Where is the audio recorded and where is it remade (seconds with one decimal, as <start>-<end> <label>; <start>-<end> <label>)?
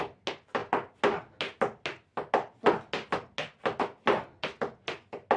0.0-5.4 recorded